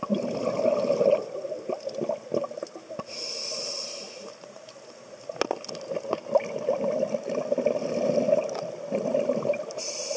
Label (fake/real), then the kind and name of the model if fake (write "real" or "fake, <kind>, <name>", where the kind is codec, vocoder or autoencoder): real